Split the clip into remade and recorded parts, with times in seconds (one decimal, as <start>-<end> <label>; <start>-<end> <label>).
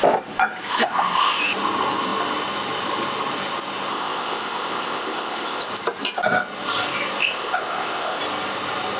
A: 0.0-0.7 recorded; 0.7-1.4 remade; 1.4-3.9 recorded; 3.9-5.7 remade; 5.7-7.2 recorded; 7.2-8.2 remade; 8.2-9.0 recorded